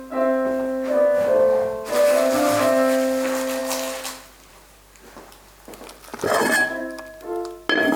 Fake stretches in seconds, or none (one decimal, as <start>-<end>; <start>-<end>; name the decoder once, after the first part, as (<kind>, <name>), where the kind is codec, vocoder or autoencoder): none